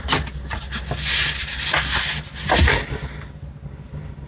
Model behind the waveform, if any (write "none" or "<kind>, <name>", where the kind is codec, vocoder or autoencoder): none